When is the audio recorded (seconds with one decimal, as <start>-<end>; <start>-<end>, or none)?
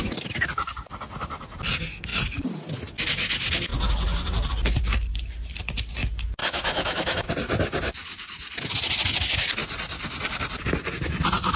0.0-6.4; 7.3-11.6